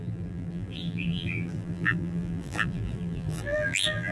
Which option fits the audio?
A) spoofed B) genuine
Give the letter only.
A